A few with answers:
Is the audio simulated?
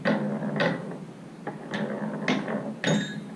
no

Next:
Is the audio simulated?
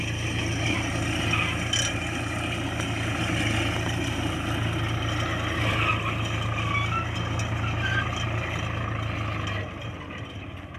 no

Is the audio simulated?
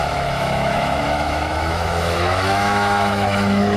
yes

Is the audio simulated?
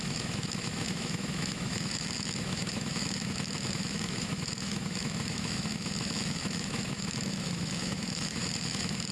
yes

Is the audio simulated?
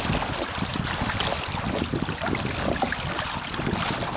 no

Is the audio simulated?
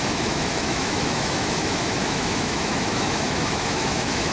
yes